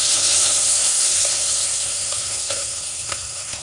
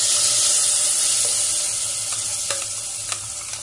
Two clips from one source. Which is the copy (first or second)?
first